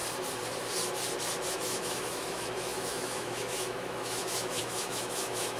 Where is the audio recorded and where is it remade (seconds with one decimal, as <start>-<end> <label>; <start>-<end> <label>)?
0.0-1.5 recorded; 1.5-5.6 remade